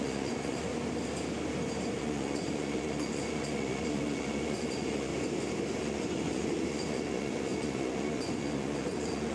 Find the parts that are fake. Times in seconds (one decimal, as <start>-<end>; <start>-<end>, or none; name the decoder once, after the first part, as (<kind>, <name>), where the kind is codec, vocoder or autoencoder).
0.0-0.7 (vocoder, Vocos); 2.0-5.1; 5.8-9.3